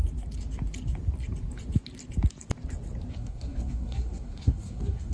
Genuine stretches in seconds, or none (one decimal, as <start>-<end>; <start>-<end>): 0.0-3.1